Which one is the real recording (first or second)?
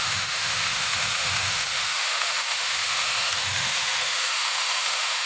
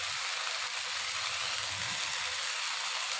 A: second